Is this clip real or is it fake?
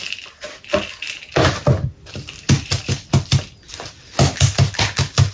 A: real